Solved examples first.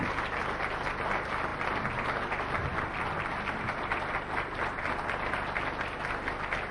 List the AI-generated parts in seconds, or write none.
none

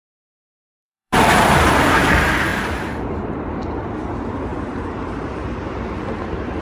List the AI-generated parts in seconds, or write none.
0.5-1.4 (vocoder, BigVGAN v2); 2.5-3.5; 4.5-5.6

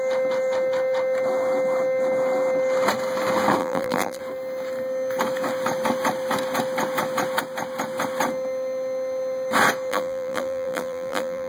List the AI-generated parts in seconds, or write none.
3.6-4.2 (vocoder, BigVGAN v2); 9.9-11.5